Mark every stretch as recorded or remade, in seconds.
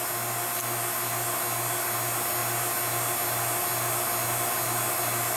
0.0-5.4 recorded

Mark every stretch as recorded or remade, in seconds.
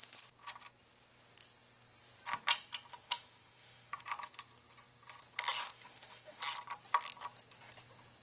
0.0-2.9 recorded; 2.9-4.0 remade; 4.0-5.6 recorded; 5.6-6.4 remade; 6.4-8.2 recorded